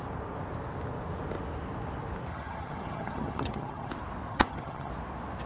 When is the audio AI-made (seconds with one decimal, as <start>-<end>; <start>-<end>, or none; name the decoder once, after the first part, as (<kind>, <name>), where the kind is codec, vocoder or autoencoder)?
2.3-3.9 (vocoder, HiFi-GAN); 4.3-4.9